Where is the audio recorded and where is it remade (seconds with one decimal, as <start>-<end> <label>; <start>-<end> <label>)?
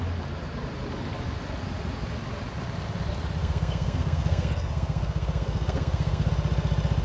0.0-3.4 recorded; 3.4-6.3 remade; 6.3-7.0 recorded